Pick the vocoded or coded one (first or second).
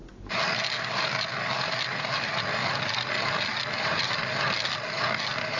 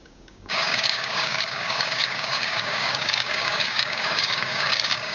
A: second